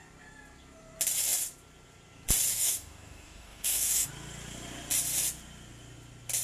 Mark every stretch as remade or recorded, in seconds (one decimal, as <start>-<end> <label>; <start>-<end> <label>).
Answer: 0.0-2.5 recorded; 2.5-4.1 remade; 4.1-6.4 recorded